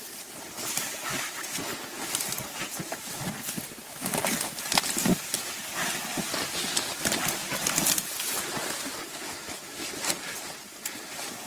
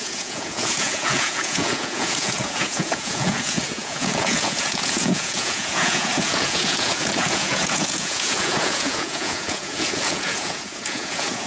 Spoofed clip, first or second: second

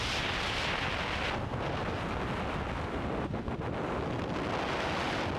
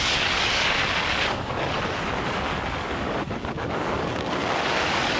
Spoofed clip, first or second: second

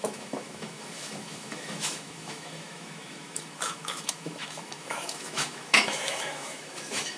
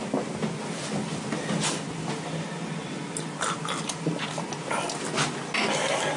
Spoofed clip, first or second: first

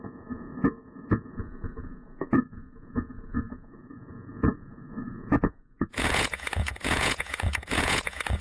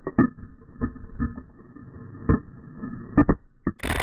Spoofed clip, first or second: first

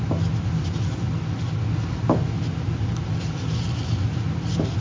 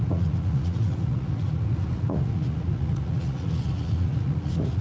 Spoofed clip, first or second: second